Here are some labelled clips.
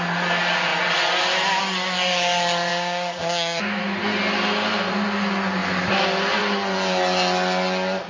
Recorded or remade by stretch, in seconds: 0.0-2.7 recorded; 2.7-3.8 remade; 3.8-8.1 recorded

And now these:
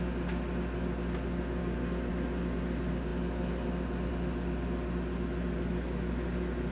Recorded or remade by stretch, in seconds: 0.0-1.6 recorded; 1.6-2.1 remade; 2.1-6.7 recorded